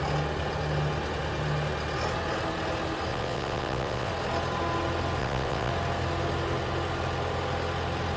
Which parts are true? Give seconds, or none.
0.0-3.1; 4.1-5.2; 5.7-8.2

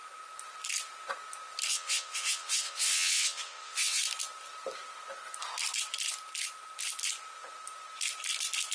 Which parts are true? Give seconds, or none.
0.0-1.7; 4.0-8.7

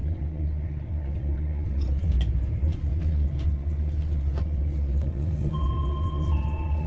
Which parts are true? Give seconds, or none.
2.1-2.6

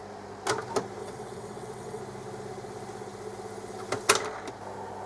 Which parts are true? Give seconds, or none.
0.0-1.0; 2.0-5.1

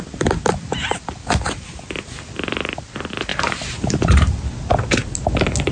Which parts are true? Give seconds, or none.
0.0-5.7

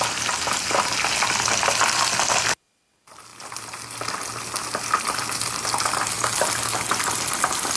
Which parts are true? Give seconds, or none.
0.0-7.8

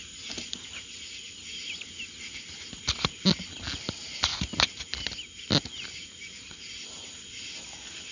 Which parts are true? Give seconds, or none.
0.0-8.1